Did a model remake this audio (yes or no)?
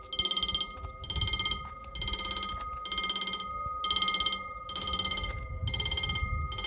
no